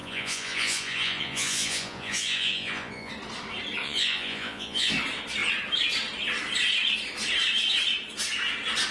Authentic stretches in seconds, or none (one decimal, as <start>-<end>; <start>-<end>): 3.1-3.8; 4.9-8.9